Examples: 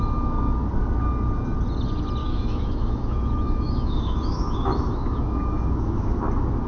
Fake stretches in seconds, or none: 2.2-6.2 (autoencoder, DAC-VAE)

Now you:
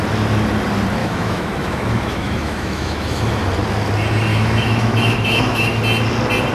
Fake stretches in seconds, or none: 1.0-3.4 (autoencoder, DAC-VAE); 4.3-5.8

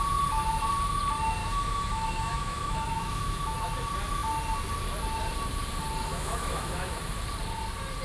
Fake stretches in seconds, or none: 1.4-3.7 (autoencoder, DAC-VAE); 6.1-7.0

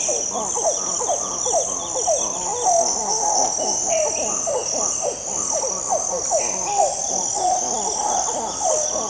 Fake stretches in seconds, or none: none

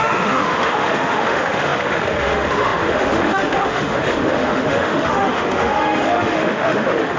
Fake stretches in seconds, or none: 0.0-7.2 (autoencoder, DAC-VAE)